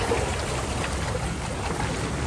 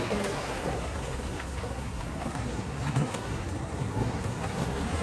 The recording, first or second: first